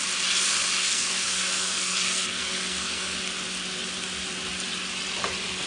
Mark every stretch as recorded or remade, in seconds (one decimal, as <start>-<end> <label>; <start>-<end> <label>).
0.0-0.8 recorded; 0.8-3.2 remade; 3.2-5.7 recorded